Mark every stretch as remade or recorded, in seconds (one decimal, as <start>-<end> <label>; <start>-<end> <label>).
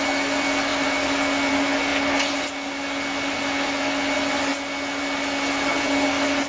0.0-6.5 recorded